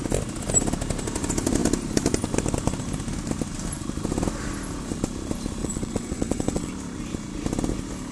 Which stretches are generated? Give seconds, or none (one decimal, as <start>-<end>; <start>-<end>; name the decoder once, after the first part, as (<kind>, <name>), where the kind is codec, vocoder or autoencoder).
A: 5.6-6.7 (vocoder, WaveNeXt)